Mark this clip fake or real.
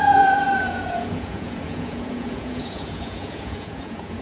fake